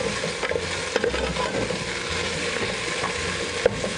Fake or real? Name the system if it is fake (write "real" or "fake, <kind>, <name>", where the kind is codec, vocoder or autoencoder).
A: real